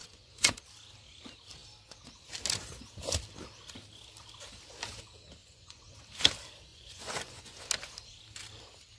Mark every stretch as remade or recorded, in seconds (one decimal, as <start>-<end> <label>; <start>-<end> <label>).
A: 0.0-0.6 remade; 0.6-5.4 recorded; 5.4-6.0 remade; 6.0-6.7 recorded; 6.7-7.6 remade; 7.6-9.0 recorded